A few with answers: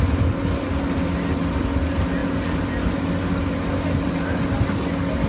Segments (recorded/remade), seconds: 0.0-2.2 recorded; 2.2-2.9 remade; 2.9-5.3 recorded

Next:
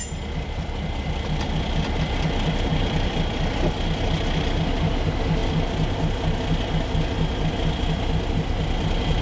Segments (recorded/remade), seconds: 0.0-9.2 recorded

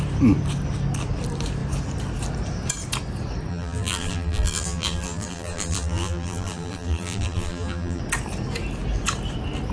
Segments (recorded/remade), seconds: 0.0-3.5 recorded; 3.5-8.0 remade; 8.0-9.7 recorded

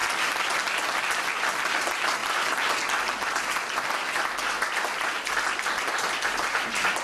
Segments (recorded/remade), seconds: 0.0-7.0 recorded

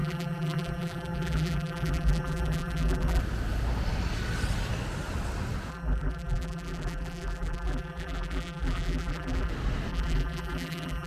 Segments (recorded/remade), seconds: 0.0-3.2 remade; 3.2-5.7 recorded; 5.7-9.5 remade; 9.5-9.9 recorded; 9.9-11.1 remade

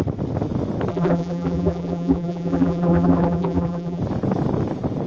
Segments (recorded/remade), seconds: 0.0-0.9 recorded; 0.9-4.0 remade; 4.0-5.1 recorded

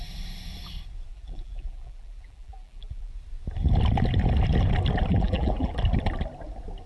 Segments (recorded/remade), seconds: 0.0-1.1 recorded; 1.1-3.1 remade; 3.1-5.1 recorded; 5.1-5.7 remade; 5.7-6.9 recorded